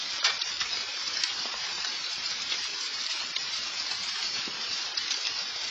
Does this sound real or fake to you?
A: fake